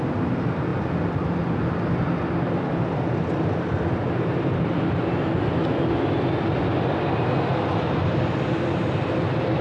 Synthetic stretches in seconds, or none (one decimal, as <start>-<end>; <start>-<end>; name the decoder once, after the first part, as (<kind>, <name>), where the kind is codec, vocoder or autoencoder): none